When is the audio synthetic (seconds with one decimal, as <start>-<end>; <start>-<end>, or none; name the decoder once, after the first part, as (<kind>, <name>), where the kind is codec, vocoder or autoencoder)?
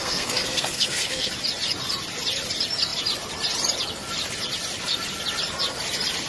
0.0-1.3 (codec, SNAC)